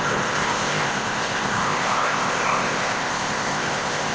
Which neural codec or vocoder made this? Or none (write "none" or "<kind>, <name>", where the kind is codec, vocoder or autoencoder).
codec, ZipCodec